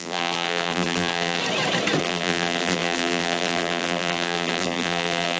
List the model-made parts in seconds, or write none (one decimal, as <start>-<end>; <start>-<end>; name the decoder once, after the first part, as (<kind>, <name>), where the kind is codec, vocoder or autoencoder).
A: 0.0-1.4 (vocoder, BigVGAN v2); 2.0-5.4